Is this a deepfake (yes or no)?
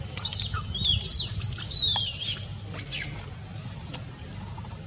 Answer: no